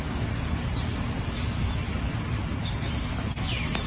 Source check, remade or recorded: recorded